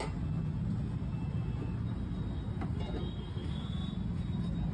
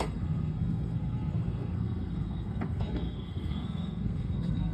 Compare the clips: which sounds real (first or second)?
first